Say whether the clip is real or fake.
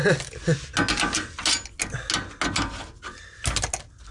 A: real